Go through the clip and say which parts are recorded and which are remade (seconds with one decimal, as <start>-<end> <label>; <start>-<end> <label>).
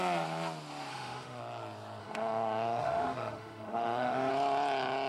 0.0-0.9 recorded; 0.9-1.4 remade; 1.4-2.0 recorded; 2.0-4.3 remade; 4.3-5.1 recorded